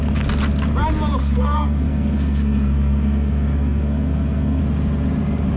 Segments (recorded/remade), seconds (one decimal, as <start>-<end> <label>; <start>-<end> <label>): 0.0-1.2 recorded; 1.2-4.6 remade; 4.6-5.6 recorded